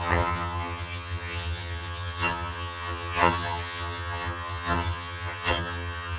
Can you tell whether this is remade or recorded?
remade